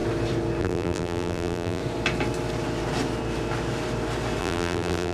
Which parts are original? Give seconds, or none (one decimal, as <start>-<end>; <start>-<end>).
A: 0.0-0.6; 1.8-4.4